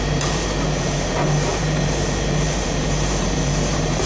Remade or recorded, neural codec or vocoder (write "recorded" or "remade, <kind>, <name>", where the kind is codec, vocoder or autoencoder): remade, vocoder, BigVGAN v2